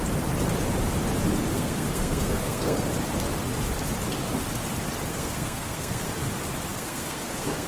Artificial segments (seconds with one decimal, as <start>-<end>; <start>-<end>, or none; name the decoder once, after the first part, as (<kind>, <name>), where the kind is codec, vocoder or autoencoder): 1.5-2.9 (codec, SNAC); 5.1-6.1; 6.7-7.7